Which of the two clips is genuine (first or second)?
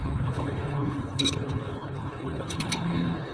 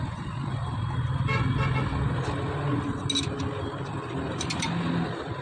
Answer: second